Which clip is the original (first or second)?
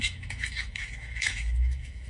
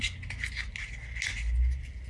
second